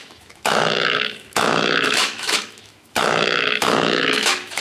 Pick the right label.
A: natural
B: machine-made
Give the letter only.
B